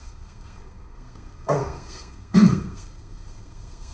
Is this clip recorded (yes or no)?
no